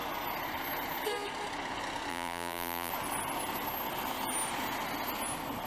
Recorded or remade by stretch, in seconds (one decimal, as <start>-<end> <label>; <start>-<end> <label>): 0.0-2.1 recorded; 2.1-2.9 remade; 2.9-5.7 recorded